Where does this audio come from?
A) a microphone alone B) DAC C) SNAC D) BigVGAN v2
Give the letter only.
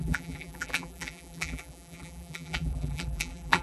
D